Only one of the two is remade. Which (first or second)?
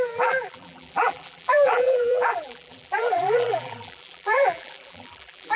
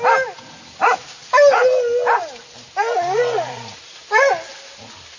first